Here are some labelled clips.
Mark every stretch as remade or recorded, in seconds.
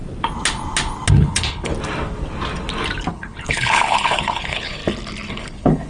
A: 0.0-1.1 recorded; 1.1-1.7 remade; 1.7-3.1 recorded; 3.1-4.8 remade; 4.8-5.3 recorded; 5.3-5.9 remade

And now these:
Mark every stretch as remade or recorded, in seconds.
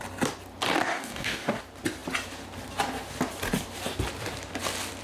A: 0.0-0.9 recorded; 0.9-1.6 remade; 1.6-5.0 recorded